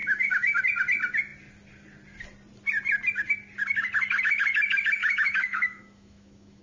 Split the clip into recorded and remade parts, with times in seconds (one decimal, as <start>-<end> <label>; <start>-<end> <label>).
0.0-0.6 remade; 0.6-5.0 recorded; 5.0-6.6 remade